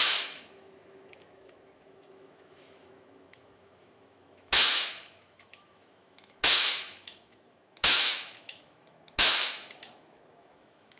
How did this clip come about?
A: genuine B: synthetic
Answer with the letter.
B